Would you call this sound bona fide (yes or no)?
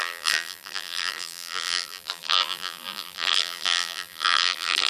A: no